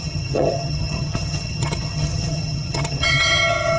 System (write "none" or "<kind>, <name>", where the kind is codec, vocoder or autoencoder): vocoder, HiFi-GAN